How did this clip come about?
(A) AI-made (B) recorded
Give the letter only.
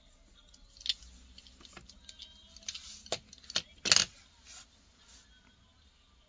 B